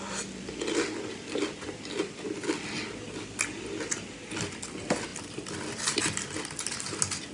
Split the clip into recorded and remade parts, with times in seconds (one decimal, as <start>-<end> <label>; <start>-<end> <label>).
0.0-7.3 recorded